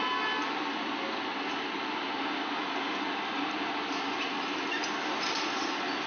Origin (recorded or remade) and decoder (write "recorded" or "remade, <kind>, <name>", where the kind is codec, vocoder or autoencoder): recorded